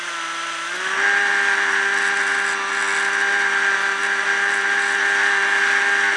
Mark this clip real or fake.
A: real